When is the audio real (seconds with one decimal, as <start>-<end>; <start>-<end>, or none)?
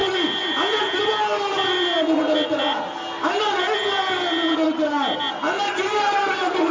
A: 1.0-6.7